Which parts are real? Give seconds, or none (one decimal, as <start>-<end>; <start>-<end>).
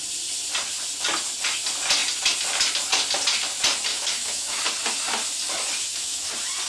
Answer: 0.0-3.9; 4.6-5.8; 6.3-6.7